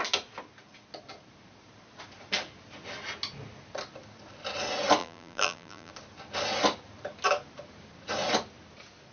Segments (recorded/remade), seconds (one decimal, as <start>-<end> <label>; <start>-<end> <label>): 0.0-5.0 recorded; 5.0-5.9 remade; 5.9-9.1 recorded